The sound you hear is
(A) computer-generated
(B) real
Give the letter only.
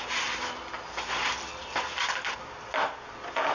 B